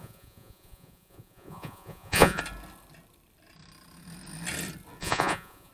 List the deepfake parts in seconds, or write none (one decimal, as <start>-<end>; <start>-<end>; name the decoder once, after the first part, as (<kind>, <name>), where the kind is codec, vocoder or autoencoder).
0.0-2.4 (vocoder, Vocos); 5.0-5.7